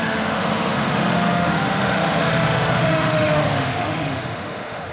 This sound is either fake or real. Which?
fake